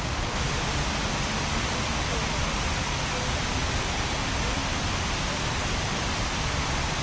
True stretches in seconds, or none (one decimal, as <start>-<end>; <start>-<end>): 0.0-7.0